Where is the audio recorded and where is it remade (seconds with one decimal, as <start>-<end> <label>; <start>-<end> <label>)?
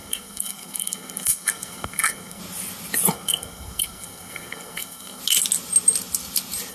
0.0-2.4 remade; 2.4-3.1 recorded; 3.1-5.2 remade; 5.2-6.7 recorded